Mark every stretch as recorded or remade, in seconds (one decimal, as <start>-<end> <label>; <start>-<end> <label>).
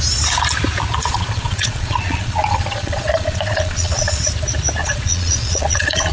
0.0-1.0 recorded; 1.0-4.2 remade; 4.2-4.8 recorded; 4.8-6.1 remade